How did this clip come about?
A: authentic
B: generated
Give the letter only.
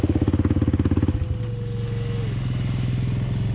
A